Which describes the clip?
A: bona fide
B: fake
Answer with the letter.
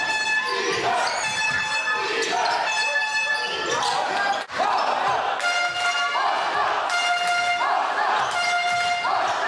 A